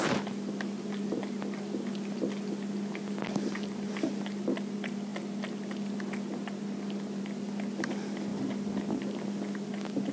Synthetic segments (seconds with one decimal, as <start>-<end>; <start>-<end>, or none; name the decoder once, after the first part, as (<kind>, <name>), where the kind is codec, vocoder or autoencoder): none